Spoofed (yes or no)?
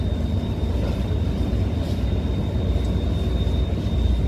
no